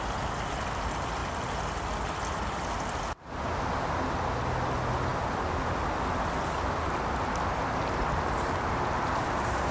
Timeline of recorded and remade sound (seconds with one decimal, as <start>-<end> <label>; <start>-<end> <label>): 0.0-7.5 recorded; 7.5-8.0 remade; 8.0-9.7 recorded